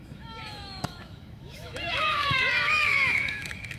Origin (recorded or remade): remade